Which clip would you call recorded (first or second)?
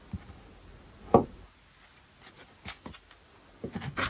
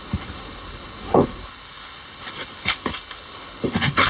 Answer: first